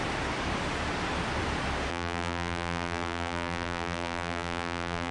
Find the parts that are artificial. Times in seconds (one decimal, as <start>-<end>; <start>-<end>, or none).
1.9-5.1

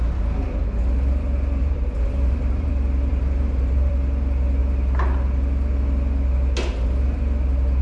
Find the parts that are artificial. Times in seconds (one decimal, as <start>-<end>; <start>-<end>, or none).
1.6-2.7; 3.1-3.9

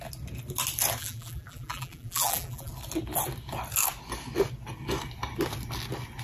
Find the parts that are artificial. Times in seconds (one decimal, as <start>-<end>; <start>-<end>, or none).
1.0-2.7